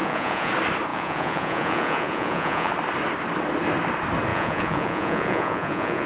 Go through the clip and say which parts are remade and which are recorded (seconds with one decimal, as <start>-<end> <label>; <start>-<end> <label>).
0.0-0.5 remade; 0.5-0.9 recorded; 0.9-2.7 remade; 2.7-4.3 recorded; 4.3-6.1 remade